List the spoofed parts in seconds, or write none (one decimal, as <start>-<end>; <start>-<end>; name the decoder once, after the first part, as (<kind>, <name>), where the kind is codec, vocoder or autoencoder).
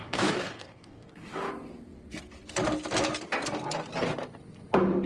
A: 0.0-1.5 (codec, DAC)